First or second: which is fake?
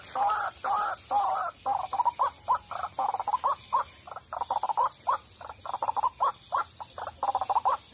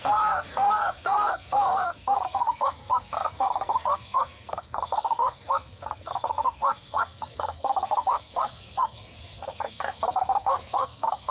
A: second